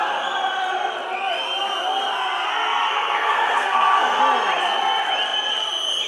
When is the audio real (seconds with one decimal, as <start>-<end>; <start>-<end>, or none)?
0.0-2.5; 4.2-6.1